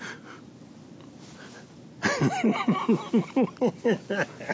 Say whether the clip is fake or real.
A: real